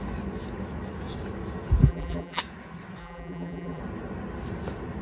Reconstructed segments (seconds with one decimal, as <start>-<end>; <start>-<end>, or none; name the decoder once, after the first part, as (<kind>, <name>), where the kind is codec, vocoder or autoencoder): 1.8-2.4 (vocoder, BigVGAN v2); 3.0-3.8